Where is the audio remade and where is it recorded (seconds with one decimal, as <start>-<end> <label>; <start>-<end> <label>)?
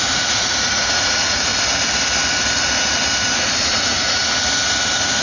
0.0-1.5 remade; 1.5-3.6 recorded; 3.6-4.2 remade; 4.2-5.2 recorded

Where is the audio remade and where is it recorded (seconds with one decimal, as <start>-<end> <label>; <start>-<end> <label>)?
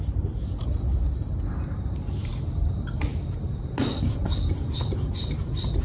0.0-5.8 recorded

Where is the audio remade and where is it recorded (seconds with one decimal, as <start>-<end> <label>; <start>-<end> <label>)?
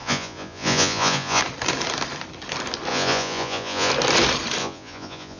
0.0-1.4 remade; 1.4-2.9 recorded; 2.9-3.9 remade; 3.9-4.6 recorded; 4.6-5.4 remade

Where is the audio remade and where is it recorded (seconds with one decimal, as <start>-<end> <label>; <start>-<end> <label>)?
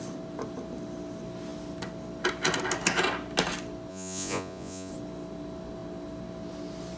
0.0-3.9 recorded; 3.9-4.9 remade; 4.9-7.0 recorded